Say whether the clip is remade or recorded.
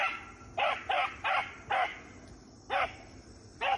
recorded